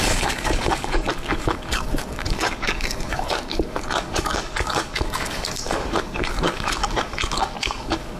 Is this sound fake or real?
fake